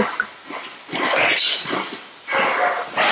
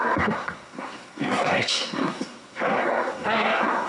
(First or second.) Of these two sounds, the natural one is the first